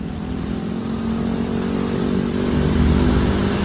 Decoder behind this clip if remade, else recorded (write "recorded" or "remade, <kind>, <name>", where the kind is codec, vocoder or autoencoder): remade, vocoder, BigVGAN v2